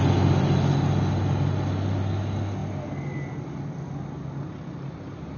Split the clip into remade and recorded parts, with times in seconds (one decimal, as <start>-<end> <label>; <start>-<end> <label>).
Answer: 0.0-5.4 recorded